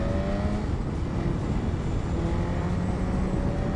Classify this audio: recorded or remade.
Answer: recorded